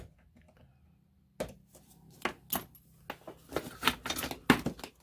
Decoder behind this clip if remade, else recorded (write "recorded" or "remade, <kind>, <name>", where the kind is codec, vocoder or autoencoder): recorded